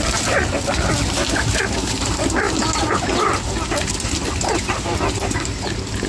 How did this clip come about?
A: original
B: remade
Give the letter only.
A